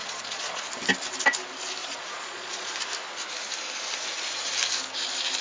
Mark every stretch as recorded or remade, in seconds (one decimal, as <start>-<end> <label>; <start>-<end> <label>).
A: 0.0-0.6 remade; 0.6-1.8 recorded; 1.8-2.7 remade; 2.7-5.4 recorded